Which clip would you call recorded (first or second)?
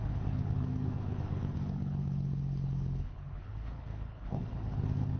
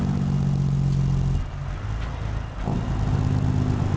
second